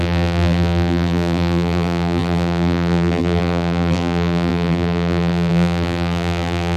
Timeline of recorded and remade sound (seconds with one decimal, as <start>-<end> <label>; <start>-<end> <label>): 0.0-6.8 remade